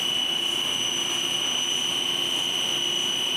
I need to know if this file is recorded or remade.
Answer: recorded